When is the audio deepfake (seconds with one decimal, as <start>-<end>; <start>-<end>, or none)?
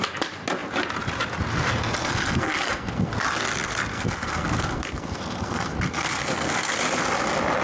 2.0-3.1; 3.9-6.7